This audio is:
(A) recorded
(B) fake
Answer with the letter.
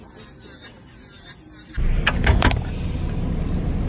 A